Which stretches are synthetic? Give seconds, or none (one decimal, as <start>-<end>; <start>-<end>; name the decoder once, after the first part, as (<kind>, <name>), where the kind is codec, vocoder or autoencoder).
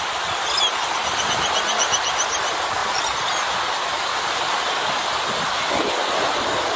none